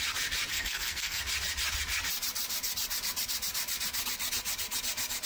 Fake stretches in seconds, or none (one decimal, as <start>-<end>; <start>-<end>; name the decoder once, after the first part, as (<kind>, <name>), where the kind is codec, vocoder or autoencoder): 0.5-1.2 (codec, SNAC)